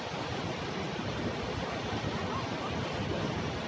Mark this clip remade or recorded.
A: recorded